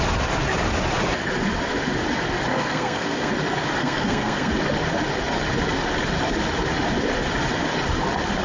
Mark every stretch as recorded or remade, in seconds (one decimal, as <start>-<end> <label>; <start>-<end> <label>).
0.0-2.5 recorded; 2.5-3.3 remade; 3.3-3.8 recorded; 3.8-4.5 remade; 4.5-8.4 recorded

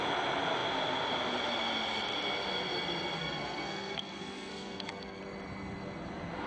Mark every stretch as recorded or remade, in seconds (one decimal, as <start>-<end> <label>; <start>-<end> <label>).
0.0-3.2 recorded; 3.2-5.2 remade; 5.2-6.5 recorded